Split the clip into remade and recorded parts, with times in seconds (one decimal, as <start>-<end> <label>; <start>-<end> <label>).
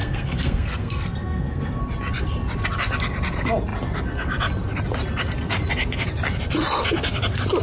0.0-1.8 remade; 1.8-7.6 recorded